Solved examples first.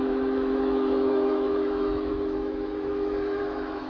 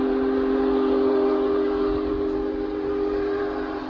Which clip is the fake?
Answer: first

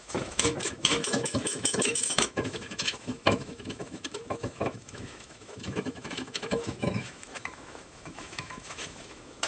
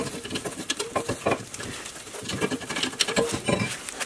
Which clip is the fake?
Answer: first